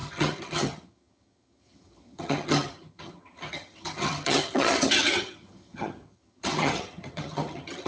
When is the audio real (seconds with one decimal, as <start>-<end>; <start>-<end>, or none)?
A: none